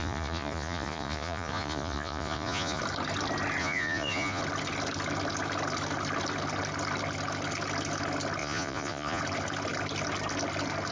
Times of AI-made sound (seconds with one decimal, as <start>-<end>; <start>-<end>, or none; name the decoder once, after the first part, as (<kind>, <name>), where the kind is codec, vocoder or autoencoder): 0.0-2.8 (vocoder, Vocos); 3.6-4.4; 8.4-9.2